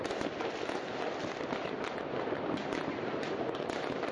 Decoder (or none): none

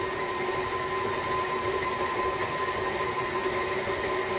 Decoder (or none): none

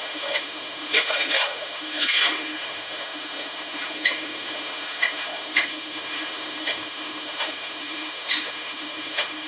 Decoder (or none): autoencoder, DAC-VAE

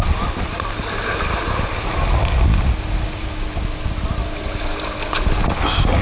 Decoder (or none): none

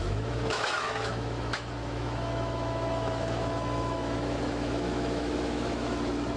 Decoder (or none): autoencoder, DAC-VAE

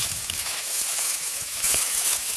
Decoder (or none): autoencoder, DAC-VAE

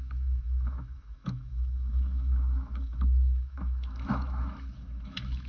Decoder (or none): autoencoder, DAC-VAE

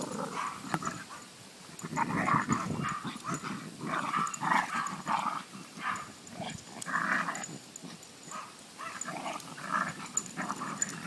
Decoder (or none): none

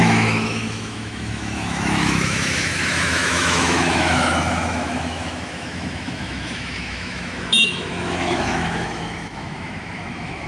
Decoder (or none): autoencoder, DAC-VAE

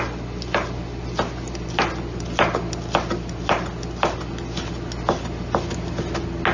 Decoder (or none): none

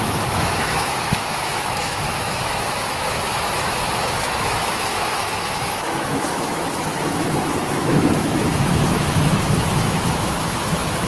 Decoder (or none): autoencoder, DAC-VAE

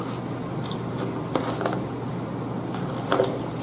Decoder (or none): none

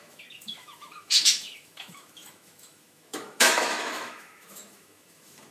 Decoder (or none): autoencoder, DAC-VAE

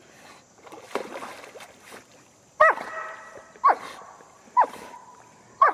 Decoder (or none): none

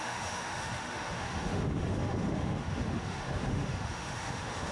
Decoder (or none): autoencoder, DAC-VAE